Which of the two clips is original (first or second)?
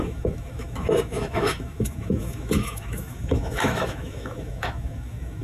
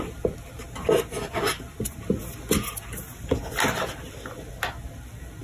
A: second